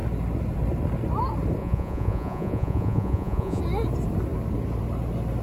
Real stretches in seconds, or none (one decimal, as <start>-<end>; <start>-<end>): 0.0-1.6; 3.6-5.4